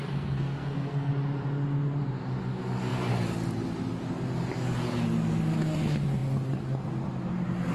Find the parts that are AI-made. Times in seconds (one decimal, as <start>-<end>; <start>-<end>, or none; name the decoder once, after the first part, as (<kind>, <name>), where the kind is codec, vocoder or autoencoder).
0.0-1.1 (codec, SNAC)